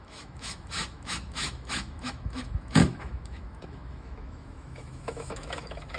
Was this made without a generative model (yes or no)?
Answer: no